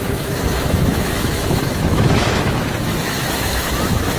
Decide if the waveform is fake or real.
fake